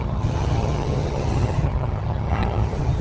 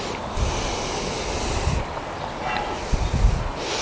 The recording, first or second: second